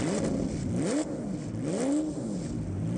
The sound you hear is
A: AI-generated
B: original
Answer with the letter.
B